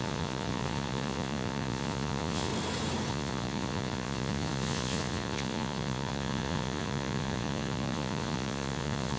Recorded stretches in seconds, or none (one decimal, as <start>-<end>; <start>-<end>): 2.5-3.1